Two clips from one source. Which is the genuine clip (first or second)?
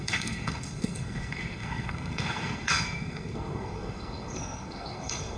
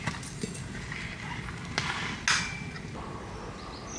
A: second